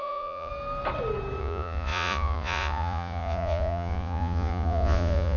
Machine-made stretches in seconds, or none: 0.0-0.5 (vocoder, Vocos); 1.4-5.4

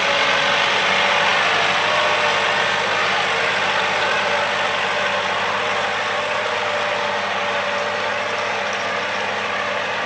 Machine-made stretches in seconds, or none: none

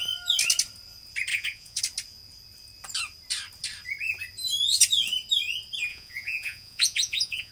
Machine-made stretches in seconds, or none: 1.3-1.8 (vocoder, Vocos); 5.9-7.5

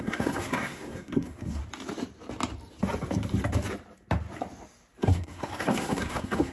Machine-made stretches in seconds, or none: 0.0-1.6 (codec, SNAC); 5.0-6.5